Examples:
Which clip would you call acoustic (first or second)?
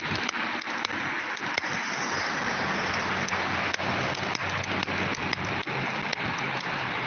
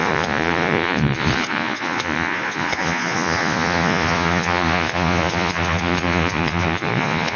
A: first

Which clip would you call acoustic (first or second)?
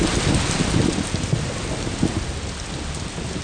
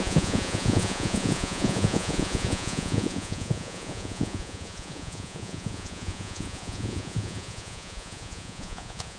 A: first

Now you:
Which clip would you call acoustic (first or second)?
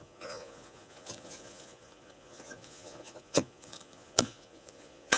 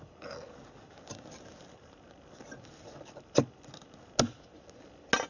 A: second